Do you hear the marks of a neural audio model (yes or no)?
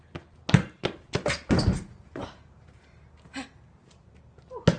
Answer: no